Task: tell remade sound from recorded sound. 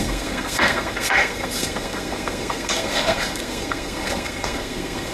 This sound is remade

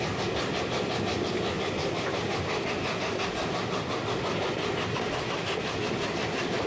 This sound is recorded